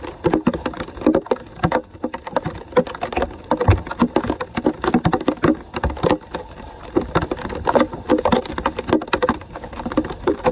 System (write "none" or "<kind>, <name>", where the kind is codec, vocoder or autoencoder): none